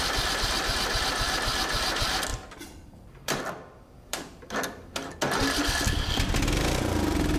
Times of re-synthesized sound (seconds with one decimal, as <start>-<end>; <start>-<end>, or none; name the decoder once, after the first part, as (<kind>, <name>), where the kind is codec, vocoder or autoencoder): 2.3-5.1 (vocoder, BigVGAN v2)